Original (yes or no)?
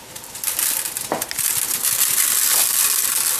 yes